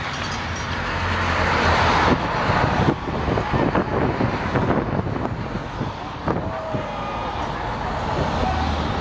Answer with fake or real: real